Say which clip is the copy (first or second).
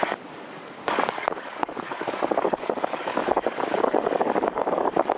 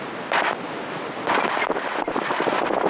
first